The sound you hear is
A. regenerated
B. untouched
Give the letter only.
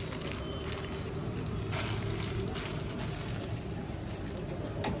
B